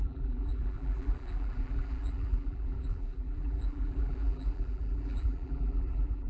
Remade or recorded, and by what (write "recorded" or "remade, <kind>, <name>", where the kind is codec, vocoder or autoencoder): remade, vocoder, BigVGAN v2